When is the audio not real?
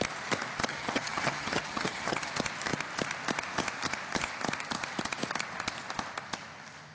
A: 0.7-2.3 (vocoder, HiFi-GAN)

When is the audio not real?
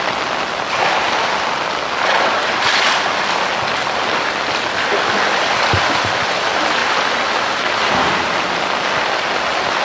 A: none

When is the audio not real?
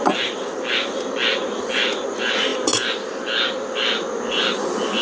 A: none